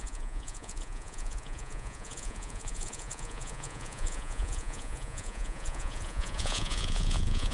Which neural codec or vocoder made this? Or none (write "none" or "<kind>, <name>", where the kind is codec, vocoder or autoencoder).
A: vocoder, Vocos